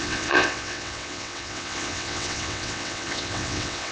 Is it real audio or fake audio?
fake